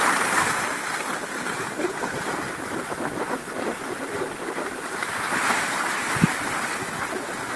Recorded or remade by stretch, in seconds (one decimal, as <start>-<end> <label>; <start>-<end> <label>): 0.0-7.6 recorded